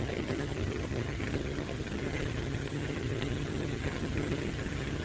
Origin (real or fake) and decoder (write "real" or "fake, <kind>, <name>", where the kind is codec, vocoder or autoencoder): fake, vocoder, HiFi-GAN